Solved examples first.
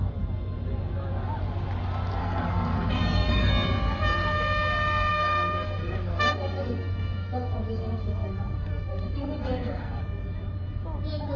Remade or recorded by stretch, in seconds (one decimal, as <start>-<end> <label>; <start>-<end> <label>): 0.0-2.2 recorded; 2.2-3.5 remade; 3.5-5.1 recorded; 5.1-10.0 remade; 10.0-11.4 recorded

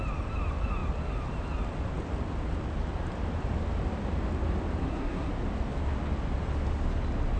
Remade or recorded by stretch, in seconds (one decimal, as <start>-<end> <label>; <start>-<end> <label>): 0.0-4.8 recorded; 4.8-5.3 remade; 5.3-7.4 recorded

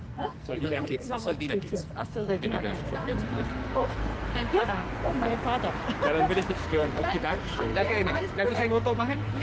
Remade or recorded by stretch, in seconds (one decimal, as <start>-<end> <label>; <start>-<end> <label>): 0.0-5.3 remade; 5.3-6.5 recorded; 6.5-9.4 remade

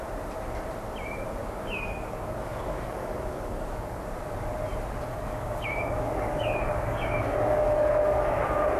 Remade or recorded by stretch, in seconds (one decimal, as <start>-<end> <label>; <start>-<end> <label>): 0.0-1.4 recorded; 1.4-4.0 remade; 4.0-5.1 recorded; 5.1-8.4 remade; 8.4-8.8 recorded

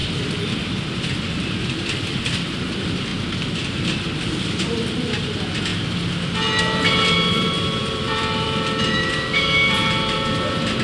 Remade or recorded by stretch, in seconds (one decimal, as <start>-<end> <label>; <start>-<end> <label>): 0.0-0.6 recorded; 0.6-3.1 remade; 3.1-4.6 recorded; 4.6-5.7 remade; 5.7-6.6 recorded; 6.6-10.8 remade

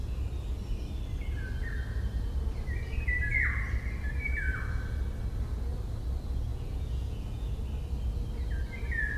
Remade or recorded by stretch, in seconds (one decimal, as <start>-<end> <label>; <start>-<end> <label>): 0.0-6.5 recorded; 6.5-7.6 remade; 7.6-9.2 recorded

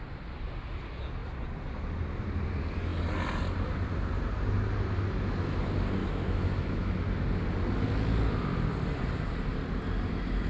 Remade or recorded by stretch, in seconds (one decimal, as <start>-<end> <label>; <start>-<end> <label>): 0.0-6.0 recorded; 6.0-7.0 remade; 7.0-10.5 recorded